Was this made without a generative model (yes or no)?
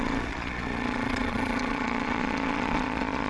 no